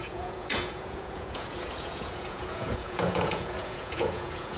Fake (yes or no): yes